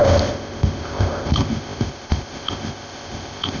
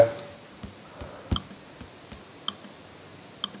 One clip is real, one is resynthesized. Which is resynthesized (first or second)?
first